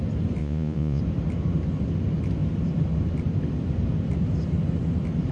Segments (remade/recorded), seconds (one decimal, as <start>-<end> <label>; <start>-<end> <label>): 0.0-0.4 recorded; 0.4-1.0 remade; 1.0-5.3 recorded